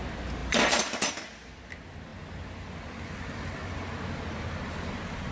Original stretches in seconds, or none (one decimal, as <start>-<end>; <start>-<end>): 0.0-5.3